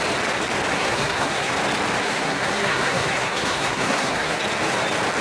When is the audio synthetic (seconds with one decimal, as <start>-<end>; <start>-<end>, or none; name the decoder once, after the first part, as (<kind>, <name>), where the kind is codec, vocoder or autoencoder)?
0.7-1.5 (codec, SNAC); 2.0-4.4

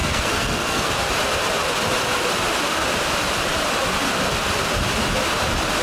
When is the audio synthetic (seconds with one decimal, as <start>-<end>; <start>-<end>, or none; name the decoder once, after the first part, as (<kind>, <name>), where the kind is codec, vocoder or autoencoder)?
0.0-0.9 (codec, SNAC)

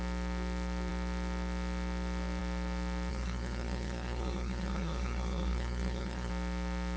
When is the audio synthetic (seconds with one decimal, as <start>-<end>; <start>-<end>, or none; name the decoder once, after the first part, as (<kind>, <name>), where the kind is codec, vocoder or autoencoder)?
3.1-6.3 (codec, SNAC)